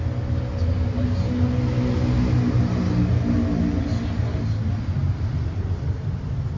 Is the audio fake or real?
real